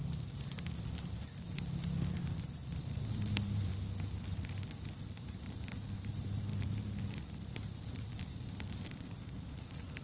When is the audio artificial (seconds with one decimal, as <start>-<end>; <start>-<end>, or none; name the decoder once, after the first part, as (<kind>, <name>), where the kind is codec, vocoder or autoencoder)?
0.0-3.7 (vocoder, BigVGAN v2); 4.4-10.0